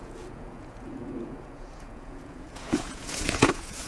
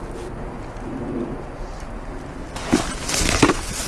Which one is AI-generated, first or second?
first